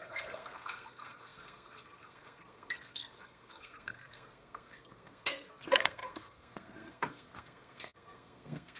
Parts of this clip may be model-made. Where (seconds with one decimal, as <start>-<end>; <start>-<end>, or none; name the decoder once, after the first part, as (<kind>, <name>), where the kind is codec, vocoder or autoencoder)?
0.0-8.8 (codec, SNAC)